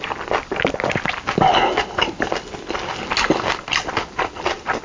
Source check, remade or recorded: recorded